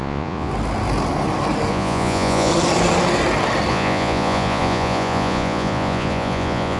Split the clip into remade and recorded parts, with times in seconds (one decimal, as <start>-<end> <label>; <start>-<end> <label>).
0.0-0.5 remade; 0.5-1.7 recorded; 1.7-2.5 remade; 2.5-3.7 recorded; 3.7-6.8 remade